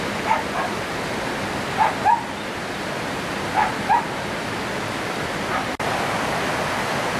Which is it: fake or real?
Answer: real